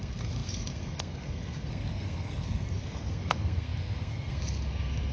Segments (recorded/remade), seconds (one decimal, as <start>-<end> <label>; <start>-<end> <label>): 0.0-5.1 remade